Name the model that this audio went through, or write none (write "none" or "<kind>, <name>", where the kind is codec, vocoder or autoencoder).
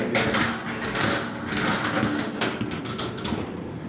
none